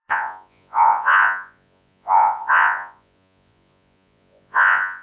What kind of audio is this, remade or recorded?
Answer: remade